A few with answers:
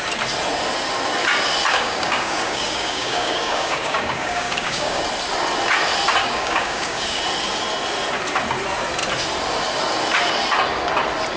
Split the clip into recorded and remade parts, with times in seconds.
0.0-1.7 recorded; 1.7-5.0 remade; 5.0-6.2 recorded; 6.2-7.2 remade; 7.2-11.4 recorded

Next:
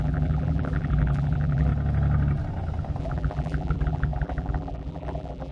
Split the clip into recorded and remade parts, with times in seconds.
0.0-1.7 remade; 1.7-3.0 recorded; 3.0-5.5 remade

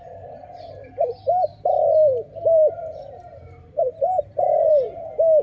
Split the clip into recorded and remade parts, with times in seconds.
0.0-1.5 recorded; 1.5-4.7 remade; 4.7-5.4 recorded